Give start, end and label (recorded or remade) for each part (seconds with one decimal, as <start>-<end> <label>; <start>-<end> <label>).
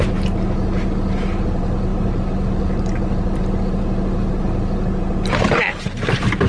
0.0-6.5 recorded